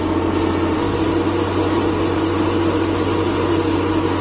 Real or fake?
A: real